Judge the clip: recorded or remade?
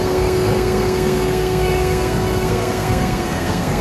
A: remade